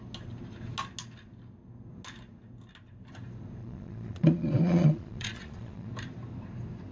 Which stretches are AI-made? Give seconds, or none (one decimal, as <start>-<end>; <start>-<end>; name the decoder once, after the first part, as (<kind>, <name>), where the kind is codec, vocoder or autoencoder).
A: 3.6-5.9 (vocoder, Vocos)